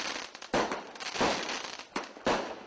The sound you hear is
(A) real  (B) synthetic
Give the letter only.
A